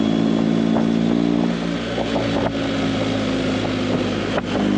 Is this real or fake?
real